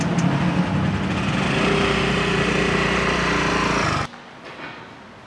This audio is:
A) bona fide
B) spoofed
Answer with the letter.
A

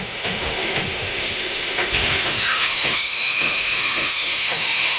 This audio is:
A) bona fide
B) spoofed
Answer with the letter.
B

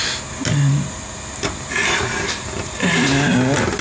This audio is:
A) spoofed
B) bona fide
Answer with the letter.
B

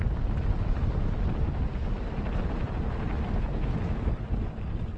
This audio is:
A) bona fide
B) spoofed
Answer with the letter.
A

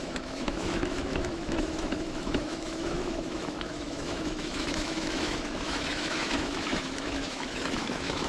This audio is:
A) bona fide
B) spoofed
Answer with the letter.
B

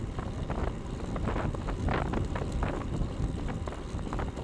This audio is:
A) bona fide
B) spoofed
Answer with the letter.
A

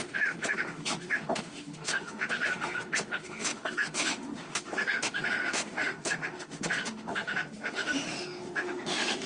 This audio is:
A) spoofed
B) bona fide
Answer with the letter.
A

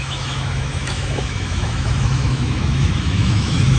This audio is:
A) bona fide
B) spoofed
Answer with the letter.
B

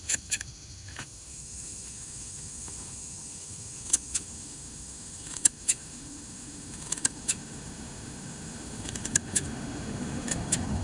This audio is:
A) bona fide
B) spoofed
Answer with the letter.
B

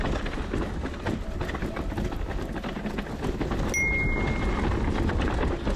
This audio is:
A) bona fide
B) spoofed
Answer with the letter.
A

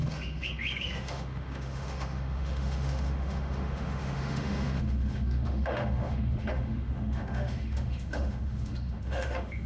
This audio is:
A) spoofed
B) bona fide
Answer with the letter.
A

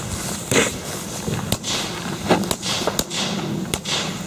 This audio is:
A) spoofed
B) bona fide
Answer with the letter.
B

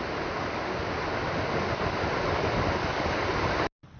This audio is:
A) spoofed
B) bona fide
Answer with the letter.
B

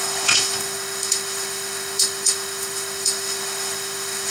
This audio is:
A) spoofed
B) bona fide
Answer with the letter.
A